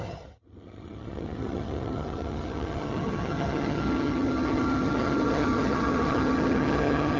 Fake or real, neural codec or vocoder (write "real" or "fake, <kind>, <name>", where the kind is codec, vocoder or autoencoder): fake, vocoder, HiFi-GAN